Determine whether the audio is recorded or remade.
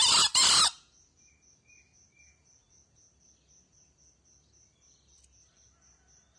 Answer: recorded